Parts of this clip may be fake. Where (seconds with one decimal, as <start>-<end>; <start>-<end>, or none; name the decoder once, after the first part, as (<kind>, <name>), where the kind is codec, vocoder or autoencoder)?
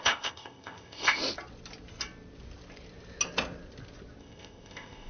0.0-1.2 (codec, ZipCodec); 4.2-5.1